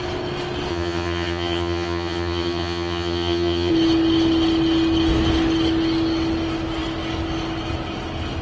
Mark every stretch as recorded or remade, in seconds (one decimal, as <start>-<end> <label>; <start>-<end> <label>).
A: 0.0-0.7 recorded; 0.7-3.7 remade; 3.7-8.4 recorded